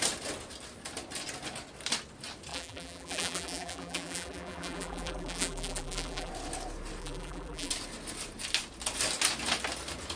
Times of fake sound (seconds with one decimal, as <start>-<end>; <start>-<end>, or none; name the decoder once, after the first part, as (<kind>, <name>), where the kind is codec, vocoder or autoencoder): 2.5-6.3 (vocoder, BigVGAN v2); 7.0-7.7